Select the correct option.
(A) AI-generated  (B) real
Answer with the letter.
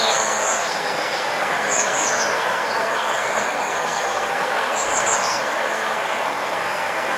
A